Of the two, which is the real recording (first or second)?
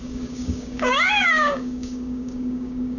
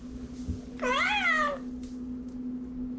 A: second